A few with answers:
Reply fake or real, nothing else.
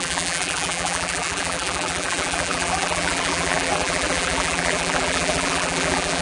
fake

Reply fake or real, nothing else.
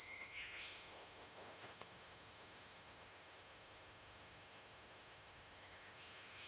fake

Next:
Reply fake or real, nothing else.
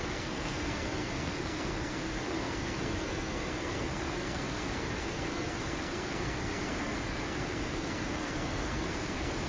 fake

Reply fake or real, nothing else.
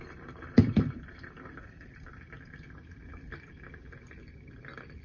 fake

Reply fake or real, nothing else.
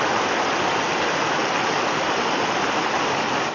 real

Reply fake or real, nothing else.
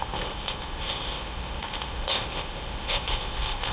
fake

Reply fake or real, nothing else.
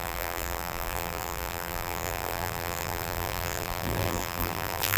fake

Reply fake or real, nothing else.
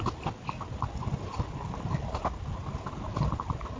real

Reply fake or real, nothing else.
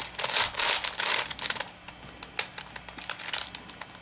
real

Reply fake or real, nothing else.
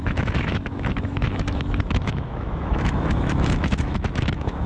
fake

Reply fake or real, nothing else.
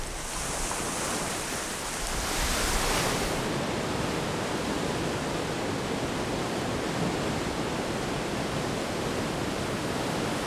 real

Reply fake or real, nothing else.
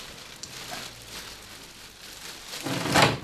real